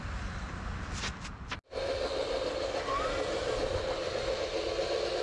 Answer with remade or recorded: recorded